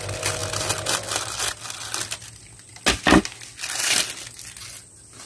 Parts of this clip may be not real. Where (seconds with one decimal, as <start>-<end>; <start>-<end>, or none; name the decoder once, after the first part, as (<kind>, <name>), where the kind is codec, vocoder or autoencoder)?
none